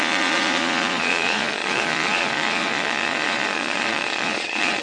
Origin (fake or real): fake